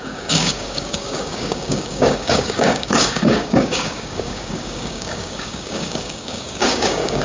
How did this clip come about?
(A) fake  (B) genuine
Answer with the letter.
A